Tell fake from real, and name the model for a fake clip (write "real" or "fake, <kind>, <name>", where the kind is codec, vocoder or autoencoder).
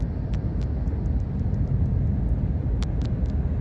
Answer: real